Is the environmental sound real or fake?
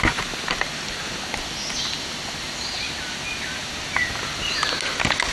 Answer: real